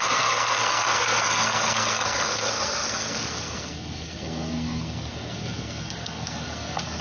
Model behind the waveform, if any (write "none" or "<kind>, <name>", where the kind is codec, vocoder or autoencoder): codec, SNAC